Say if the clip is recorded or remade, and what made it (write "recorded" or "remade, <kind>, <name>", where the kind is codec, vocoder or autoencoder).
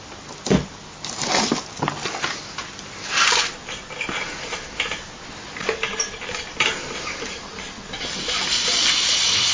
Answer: recorded